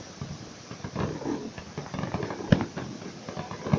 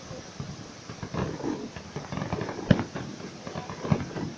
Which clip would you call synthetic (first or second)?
second